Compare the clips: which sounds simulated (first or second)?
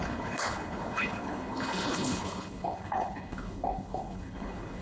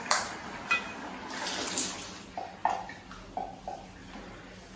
first